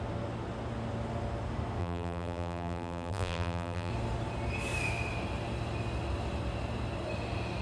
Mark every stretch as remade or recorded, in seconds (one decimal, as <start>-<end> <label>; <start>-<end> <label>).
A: 0.0-1.8 recorded; 1.8-3.9 remade; 3.9-7.6 recorded